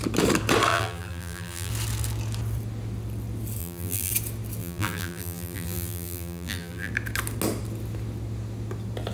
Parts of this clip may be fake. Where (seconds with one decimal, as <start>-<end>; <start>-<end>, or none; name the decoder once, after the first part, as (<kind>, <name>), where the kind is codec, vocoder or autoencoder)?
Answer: 0.7-1.7 (vocoder, BigVGAN v2); 3.6-4.1; 4.6-6.9